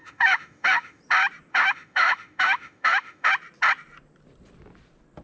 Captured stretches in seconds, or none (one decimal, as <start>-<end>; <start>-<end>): 1.0-1.5; 3.3-5.2